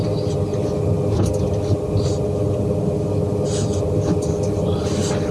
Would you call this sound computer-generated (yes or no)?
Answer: no